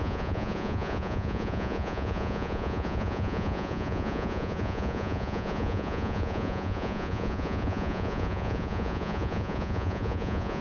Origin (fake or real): fake